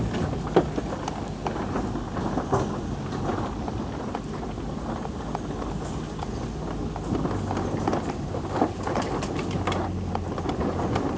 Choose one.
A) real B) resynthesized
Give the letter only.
A